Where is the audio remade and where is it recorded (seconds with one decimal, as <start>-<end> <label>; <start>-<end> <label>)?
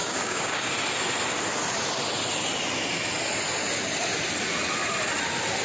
0.0-0.7 remade; 0.7-5.6 recorded